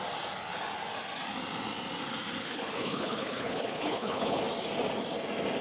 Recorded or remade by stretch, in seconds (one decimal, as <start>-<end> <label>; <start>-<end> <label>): 0.0-2.4 recorded; 2.4-4.4 remade; 4.4-5.6 recorded